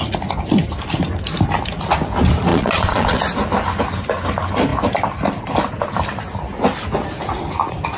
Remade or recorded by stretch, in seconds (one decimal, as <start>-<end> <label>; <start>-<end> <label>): 0.0-2.5 recorded; 2.5-3.2 remade; 3.2-8.0 recorded